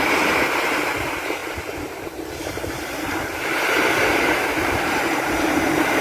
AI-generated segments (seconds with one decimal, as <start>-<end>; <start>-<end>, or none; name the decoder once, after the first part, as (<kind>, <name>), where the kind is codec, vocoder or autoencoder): 0.0-6.0 (vocoder, BigVGAN v2)